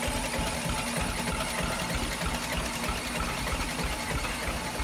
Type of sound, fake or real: real